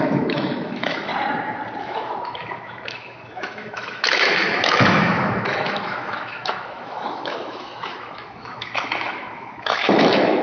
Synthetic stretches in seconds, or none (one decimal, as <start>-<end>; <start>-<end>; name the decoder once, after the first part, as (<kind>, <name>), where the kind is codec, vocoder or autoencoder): 0.0-1.1 (autoencoder, DAC-VAE); 1.8-10.4